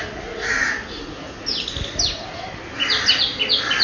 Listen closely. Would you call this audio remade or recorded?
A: recorded